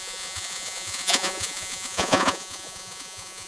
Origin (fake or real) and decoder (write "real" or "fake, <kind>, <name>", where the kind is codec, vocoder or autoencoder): fake, vocoder, Vocos